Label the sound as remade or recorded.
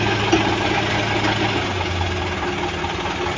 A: recorded